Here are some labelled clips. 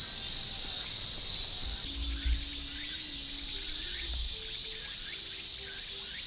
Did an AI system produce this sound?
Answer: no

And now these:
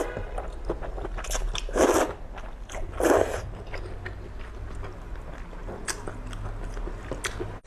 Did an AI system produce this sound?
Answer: no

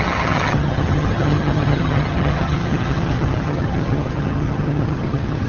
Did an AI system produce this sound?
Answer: yes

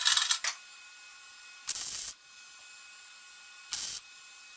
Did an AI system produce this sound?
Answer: no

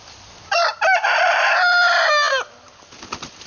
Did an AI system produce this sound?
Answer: no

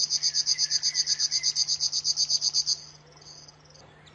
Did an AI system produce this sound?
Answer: no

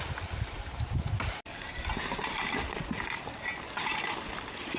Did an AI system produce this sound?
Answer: no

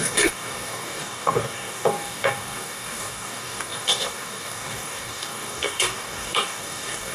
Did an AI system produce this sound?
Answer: yes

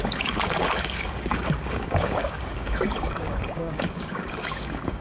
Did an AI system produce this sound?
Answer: yes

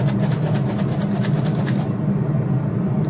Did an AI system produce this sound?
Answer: no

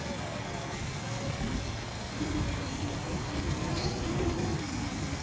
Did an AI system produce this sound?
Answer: yes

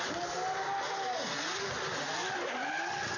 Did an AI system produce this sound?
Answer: no